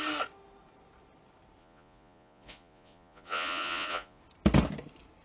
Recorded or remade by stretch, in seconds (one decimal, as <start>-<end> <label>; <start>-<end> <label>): 0.0-1.6 recorded; 1.6-4.2 remade; 4.2-5.2 recorded